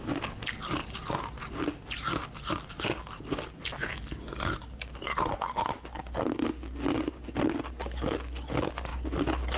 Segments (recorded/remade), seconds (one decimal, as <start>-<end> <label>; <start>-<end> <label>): 0.0-9.6 recorded